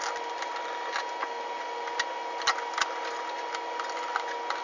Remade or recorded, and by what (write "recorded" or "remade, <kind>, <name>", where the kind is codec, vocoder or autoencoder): recorded